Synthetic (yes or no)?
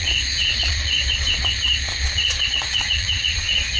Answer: yes